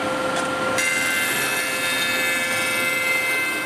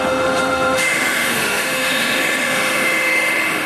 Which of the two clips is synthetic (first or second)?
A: second